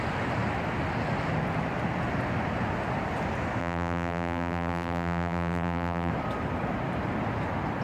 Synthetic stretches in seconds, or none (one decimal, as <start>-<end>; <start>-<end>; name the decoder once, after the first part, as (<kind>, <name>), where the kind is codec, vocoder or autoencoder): 3.6-6.1 (vocoder, BigVGAN v2)